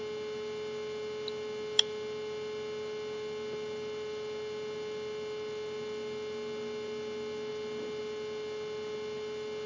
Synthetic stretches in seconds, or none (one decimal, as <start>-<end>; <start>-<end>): none